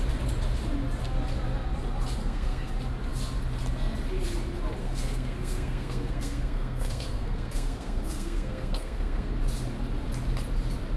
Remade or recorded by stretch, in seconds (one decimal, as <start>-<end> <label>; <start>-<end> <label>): 0.0-2.2 recorded; 2.2-2.7 remade; 2.7-4.8 recorded; 4.8-9.3 remade; 9.3-11.0 recorded

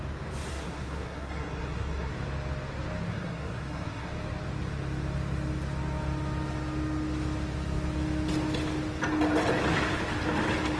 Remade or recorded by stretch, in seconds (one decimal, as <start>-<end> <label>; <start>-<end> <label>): 0.0-0.5 recorded; 0.5-2.1 remade; 2.1-3.1 recorded; 3.1-4.1 remade; 4.1-10.8 recorded

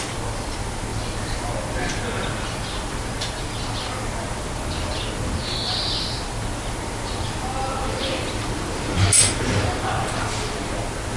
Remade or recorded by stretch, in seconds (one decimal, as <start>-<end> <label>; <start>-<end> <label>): 0.0-11.2 recorded

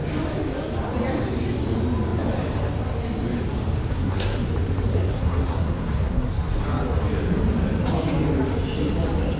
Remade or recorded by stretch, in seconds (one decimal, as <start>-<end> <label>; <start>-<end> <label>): 0.0-3.9 recorded; 3.9-4.5 remade; 4.5-4.9 recorded; 4.9-6.3 remade; 6.3-9.4 recorded

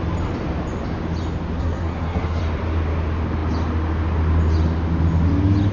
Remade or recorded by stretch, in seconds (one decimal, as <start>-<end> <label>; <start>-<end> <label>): 0.0-1.6 recorded; 1.6-2.4 remade; 2.4-5.7 recorded

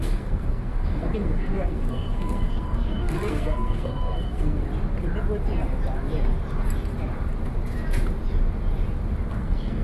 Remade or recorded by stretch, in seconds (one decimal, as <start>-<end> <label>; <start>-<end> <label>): 0.0-4.6 remade; 4.6-9.3 recorded; 9.3-9.8 remade

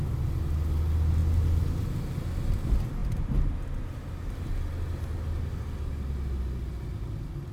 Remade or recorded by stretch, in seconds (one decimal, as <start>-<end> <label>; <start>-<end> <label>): 0.0-7.5 recorded